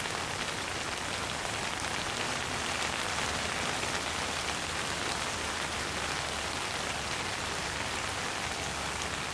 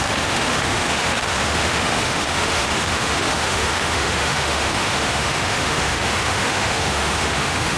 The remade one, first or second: second